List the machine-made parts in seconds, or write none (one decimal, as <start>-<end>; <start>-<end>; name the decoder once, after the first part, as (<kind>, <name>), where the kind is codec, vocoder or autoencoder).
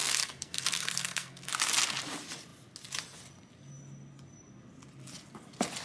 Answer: 0.0-1.5 (codec, SNAC)